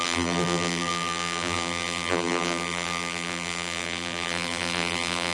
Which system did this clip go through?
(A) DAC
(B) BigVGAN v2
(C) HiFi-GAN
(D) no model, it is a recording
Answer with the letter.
B